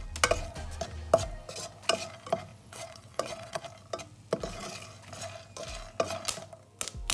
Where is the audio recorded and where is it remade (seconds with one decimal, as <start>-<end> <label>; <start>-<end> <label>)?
0.0-2.5 recorded; 2.5-3.6 remade; 3.6-7.1 recorded